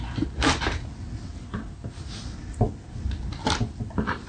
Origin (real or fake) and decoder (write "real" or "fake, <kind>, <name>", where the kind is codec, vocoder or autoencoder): real